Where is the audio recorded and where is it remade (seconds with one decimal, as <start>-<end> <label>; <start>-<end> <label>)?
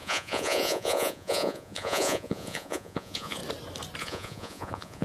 0.0-3.4 remade; 3.4-4.0 recorded; 4.0-5.0 remade